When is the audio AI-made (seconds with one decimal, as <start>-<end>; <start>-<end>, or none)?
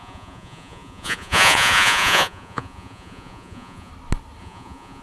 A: 0.0-3.9; 4.4-5.0